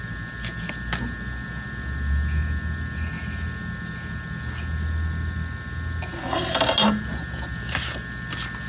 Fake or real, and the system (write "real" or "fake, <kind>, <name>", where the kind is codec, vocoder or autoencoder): real